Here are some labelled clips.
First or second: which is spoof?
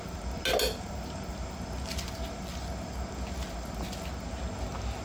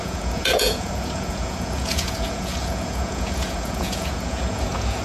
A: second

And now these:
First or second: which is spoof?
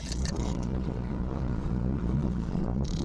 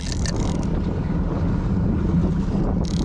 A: first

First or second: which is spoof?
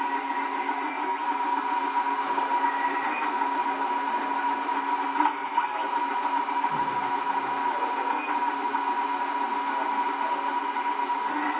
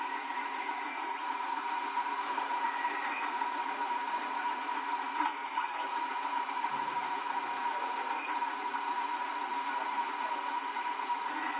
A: second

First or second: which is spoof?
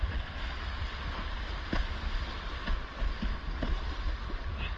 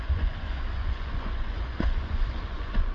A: second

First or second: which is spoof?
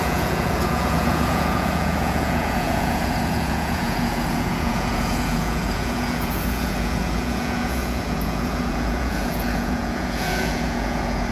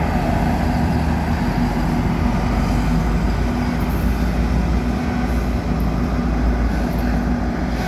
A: first